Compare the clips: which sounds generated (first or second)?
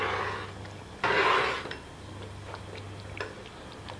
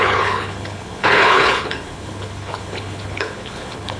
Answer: second